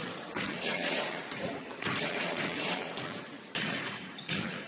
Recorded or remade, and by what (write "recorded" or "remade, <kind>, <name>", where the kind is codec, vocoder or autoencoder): remade, vocoder, Vocos